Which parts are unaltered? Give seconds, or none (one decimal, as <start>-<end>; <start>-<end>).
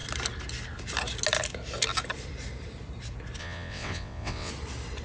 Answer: 0.0-3.4; 4.5-5.0